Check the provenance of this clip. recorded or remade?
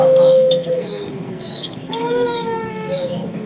remade